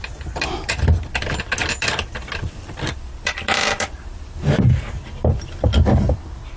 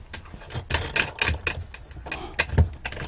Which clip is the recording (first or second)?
second